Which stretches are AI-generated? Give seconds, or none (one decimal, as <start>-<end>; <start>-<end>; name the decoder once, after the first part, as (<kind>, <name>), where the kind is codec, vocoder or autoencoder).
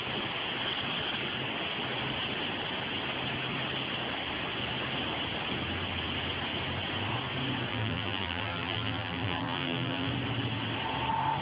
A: 7.7-10.1 (vocoder, BigVGAN v2)